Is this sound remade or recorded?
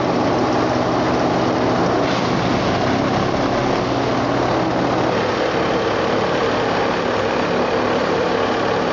recorded